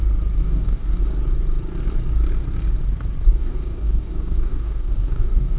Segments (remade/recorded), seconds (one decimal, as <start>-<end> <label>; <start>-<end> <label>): 0.0-0.4 recorded; 0.4-1.0 remade; 1.0-3.4 recorded; 3.4-5.6 remade